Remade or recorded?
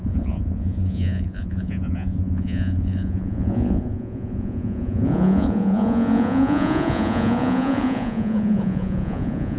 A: remade